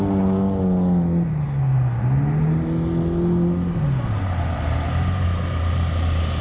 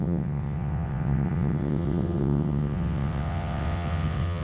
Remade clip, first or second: second